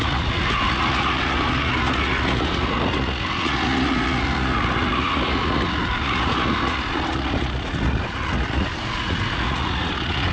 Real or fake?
fake